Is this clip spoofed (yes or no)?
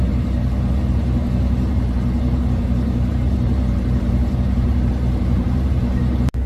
yes